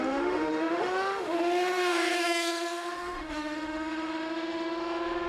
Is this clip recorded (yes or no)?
no